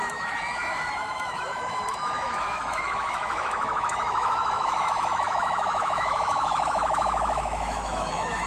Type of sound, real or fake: fake